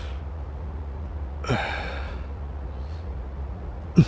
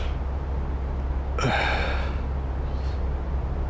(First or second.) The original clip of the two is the second